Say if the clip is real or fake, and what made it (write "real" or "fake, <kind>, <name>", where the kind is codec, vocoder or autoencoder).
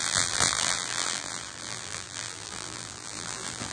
fake, vocoder, BigVGAN v2